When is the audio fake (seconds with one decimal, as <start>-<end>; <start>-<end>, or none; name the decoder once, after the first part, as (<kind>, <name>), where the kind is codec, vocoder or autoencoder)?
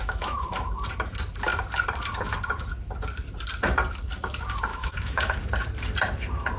0.0-0.8 (autoencoder, DAC-VAE); 4.7-5.4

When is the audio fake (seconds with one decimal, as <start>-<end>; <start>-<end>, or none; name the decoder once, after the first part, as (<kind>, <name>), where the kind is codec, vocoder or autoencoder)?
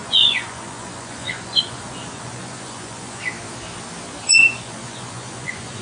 0.0-3.2 (vocoder, Vocos); 4.2-5.8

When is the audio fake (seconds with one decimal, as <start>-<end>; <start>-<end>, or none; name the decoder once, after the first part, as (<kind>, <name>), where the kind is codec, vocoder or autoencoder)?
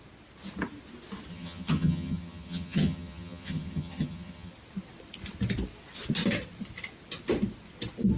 1.3-4.5 (vocoder, HiFi-GAN)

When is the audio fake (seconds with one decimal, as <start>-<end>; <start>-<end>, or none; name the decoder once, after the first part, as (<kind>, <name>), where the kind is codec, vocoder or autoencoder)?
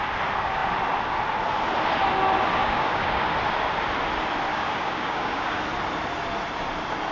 2.6-3.2 (codec, DAC); 4.5-5.6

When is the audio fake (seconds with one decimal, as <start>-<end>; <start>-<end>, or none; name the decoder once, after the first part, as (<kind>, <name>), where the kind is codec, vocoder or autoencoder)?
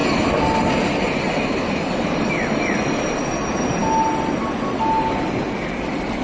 none